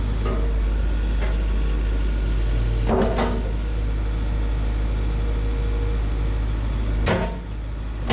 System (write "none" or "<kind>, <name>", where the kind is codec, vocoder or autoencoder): none